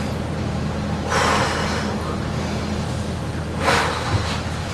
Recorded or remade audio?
recorded